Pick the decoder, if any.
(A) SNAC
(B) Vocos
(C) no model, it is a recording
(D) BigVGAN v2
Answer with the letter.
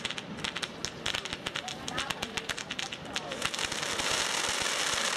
C